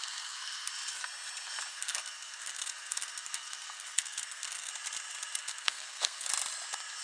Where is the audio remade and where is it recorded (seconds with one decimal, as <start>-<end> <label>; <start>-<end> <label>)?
0.0-0.7 remade; 0.7-1.7 recorded; 1.7-4.7 remade; 4.7-5.4 recorded; 5.4-6.3 remade; 6.3-7.0 recorded